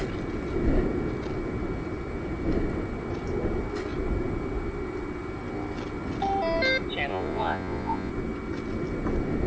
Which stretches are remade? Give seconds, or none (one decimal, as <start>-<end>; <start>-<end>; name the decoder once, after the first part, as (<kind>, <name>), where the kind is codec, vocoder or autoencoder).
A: 7.1-8.1 (vocoder, Vocos)